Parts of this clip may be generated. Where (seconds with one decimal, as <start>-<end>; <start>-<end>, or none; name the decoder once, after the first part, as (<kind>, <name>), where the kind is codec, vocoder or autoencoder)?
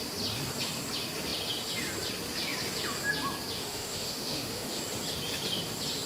3.6-4.8 (autoencoder, DAC-VAE)